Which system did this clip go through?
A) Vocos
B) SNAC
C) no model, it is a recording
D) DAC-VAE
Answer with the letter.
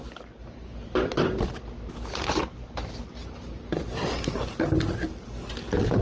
C